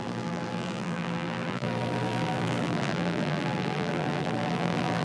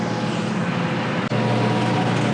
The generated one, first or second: first